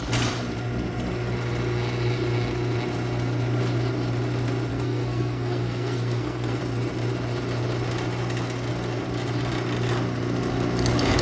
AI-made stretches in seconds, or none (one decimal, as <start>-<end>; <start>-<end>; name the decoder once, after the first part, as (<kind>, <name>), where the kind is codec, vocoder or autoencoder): 4.7-6.6 (codec, SNAC)